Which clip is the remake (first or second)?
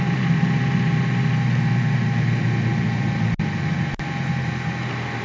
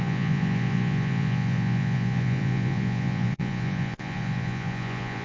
second